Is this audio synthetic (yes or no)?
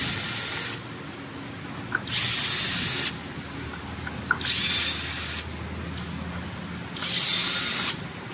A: no